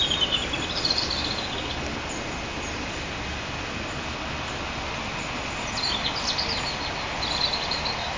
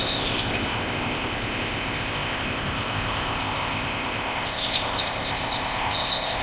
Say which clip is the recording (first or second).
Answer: first